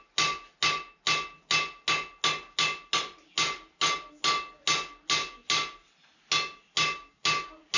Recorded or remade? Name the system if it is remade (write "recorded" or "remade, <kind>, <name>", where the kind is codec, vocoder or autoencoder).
recorded